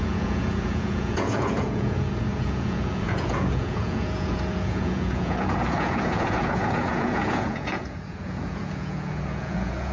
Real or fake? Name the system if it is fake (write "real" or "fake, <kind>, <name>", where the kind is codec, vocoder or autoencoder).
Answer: fake, vocoder, Vocos